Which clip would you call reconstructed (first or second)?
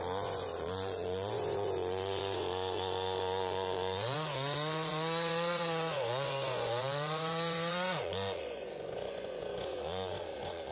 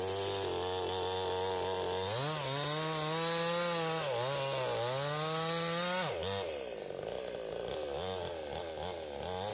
first